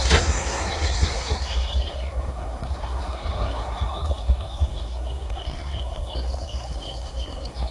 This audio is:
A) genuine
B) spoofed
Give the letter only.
B